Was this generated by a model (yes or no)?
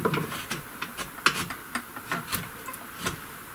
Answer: no